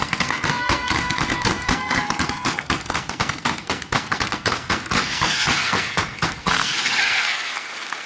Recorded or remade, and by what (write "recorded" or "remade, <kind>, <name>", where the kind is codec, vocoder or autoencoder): remade, codec, SNAC